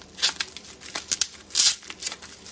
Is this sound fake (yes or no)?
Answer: no